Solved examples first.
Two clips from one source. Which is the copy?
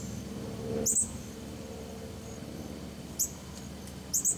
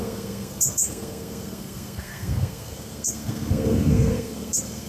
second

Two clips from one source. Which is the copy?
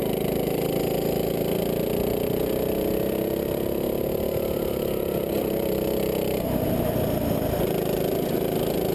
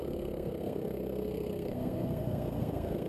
second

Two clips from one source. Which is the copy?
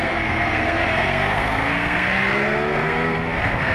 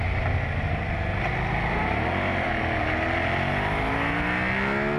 first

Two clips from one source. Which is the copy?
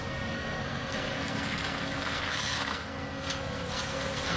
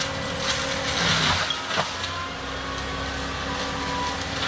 first